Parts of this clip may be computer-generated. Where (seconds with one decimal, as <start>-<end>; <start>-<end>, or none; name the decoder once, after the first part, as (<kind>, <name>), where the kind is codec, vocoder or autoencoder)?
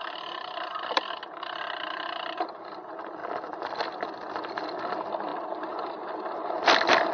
0.0-3.2 (vocoder, BigVGAN v2); 4.7-5.3; 6.1-7.1